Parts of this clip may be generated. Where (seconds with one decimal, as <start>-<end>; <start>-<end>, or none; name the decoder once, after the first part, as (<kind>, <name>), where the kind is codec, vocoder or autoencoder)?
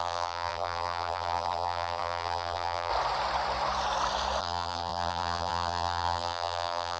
0.0-2.9 (vocoder, BigVGAN v2); 4.4-7.0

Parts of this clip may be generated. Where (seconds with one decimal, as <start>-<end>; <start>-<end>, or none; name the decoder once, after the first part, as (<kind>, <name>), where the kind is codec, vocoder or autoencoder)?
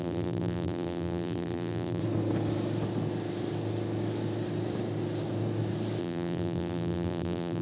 0.0-2.0 (vocoder, BigVGAN v2); 6.0-7.6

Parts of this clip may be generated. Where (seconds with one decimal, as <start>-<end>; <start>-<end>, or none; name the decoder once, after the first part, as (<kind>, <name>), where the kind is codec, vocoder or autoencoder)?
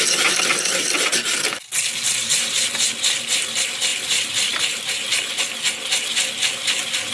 3.9-5.1 (vocoder, BigVGAN v2)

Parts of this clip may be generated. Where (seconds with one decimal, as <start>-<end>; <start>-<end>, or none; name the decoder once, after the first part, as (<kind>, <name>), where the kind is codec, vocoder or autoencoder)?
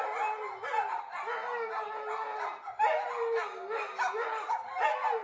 none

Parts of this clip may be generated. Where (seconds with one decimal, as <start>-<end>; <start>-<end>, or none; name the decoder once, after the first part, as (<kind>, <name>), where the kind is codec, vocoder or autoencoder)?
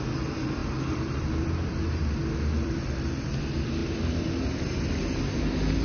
0.0-3.8 (vocoder, BigVGAN v2); 5.2-5.8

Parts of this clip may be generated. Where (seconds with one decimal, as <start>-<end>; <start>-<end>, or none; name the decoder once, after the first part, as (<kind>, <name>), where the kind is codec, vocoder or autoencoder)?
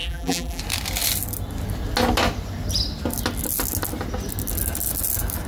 0.0-0.6 (vocoder, BigVGAN v2)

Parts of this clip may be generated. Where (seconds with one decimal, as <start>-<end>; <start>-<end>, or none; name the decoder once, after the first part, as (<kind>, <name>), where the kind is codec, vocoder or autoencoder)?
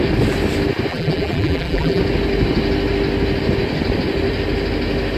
0.9-2.0 (vocoder, BigVGAN v2)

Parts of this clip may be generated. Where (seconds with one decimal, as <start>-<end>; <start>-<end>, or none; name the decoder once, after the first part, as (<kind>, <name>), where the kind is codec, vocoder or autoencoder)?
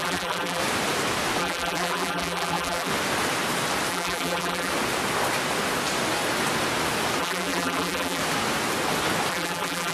0.0-0.6 (vocoder, BigVGAN v2); 1.4-2.9; 3.9-4.7; 7.2-8.2; 9.3-9.9